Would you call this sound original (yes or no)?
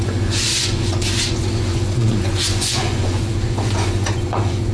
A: no